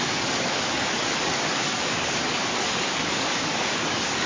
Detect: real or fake fake